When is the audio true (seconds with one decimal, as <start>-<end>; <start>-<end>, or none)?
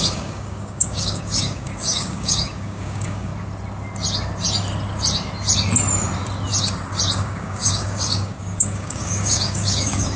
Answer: 3.3-7.2